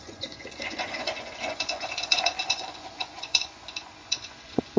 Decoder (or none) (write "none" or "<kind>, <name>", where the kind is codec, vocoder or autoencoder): vocoder, Vocos